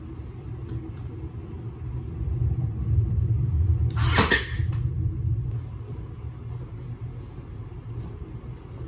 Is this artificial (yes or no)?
no